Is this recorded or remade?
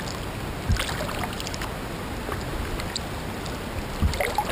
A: recorded